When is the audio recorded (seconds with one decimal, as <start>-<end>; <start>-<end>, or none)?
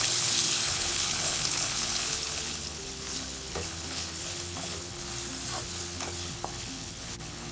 5.0-5.6